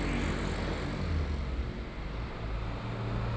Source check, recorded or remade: recorded